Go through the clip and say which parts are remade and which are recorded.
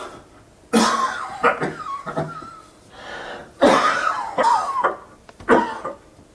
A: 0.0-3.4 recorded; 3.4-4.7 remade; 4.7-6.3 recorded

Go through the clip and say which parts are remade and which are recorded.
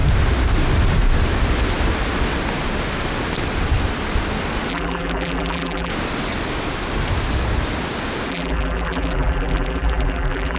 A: 0.0-4.7 recorded; 4.7-5.9 remade; 5.9-8.3 recorded; 8.3-10.6 remade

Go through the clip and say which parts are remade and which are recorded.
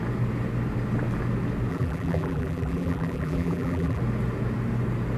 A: 0.0-1.7 recorded; 1.7-4.0 remade; 4.0-5.2 recorded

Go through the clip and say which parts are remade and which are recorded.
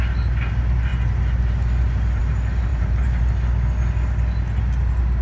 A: 0.0-2.7 recorded; 2.7-3.3 remade; 3.3-5.2 recorded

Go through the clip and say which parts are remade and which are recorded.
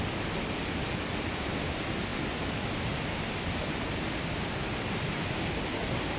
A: 0.0-6.2 recorded